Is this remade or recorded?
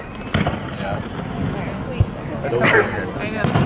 recorded